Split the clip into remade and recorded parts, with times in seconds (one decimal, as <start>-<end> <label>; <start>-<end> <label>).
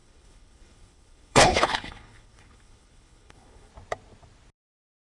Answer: 0.0-3.7 remade; 3.7-5.1 recorded